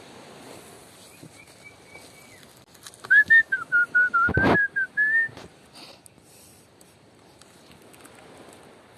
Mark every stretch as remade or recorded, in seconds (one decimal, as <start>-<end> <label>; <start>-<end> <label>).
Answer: 0.0-9.0 recorded